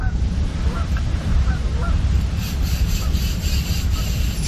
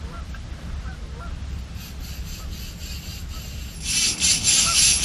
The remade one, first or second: first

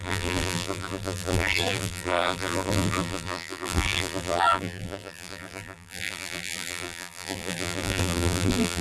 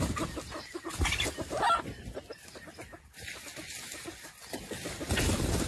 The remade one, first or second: first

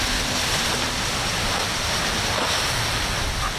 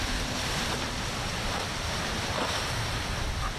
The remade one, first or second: second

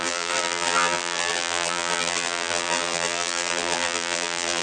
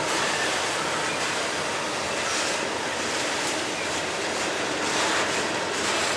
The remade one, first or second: first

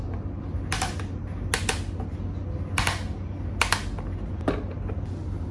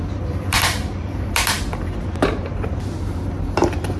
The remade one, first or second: second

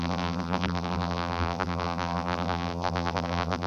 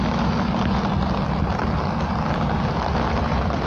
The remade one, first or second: first